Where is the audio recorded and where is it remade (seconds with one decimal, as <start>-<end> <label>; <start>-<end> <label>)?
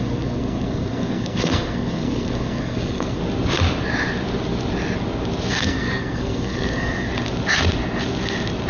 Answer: 0.0-3.2 remade; 3.2-5.5 recorded; 5.5-7.1 remade; 7.1-8.7 recorded